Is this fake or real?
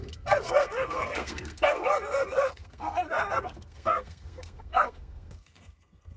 fake